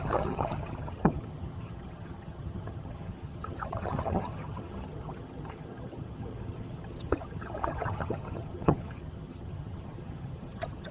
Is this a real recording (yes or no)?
no